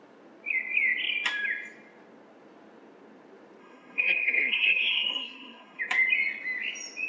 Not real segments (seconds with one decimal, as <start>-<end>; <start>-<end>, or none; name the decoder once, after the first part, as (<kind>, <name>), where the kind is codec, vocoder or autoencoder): 3.6-5.8 (codec, SNAC)